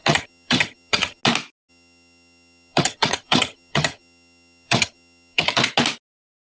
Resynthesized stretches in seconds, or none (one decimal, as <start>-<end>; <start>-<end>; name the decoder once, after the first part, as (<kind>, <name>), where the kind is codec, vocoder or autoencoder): 0.0-1.2 (vocoder, HiFi-GAN); 1.7-5.6